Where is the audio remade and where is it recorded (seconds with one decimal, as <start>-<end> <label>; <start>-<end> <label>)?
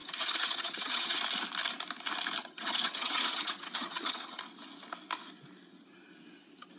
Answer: 0.0-1.2 remade; 1.2-2.4 recorded; 2.4-4.4 remade; 4.4-6.8 recorded